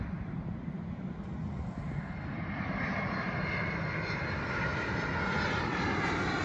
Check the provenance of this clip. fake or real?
real